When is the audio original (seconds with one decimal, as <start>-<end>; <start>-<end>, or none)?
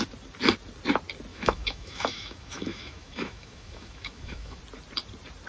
0.0-1.3; 4.6-5.5